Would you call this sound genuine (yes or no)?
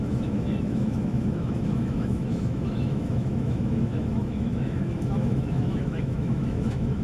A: no